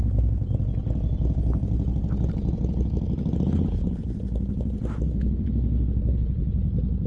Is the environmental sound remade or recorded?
recorded